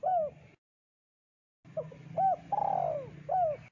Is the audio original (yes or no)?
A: yes